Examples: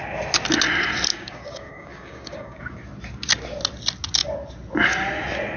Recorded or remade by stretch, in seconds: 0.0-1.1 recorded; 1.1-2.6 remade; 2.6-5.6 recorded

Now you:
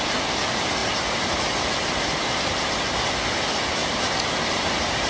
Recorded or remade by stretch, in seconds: 0.0-5.1 recorded